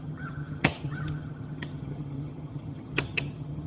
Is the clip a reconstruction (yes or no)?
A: yes